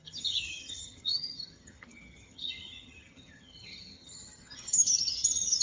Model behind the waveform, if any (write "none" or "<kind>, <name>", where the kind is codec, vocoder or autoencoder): vocoder, HiFi-GAN